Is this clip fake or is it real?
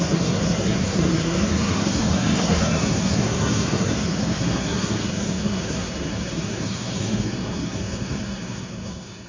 fake